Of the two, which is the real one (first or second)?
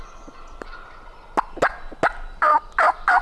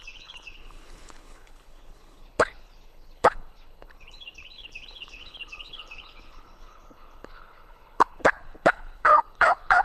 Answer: first